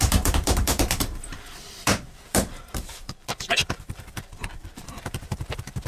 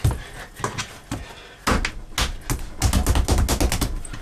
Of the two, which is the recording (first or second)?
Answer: second